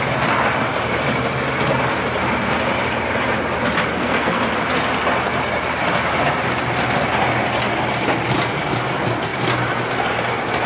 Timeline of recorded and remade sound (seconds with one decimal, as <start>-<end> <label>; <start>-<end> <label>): 0.0-3.9 recorded; 3.9-4.4 remade; 4.4-10.7 recorded